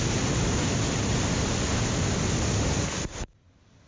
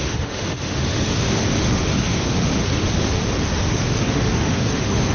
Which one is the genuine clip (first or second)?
first